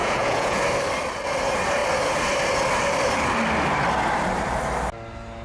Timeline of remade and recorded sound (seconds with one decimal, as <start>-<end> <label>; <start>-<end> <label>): 0.0-0.6 remade; 0.6-5.4 recorded